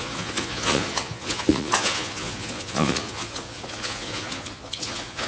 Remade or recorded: remade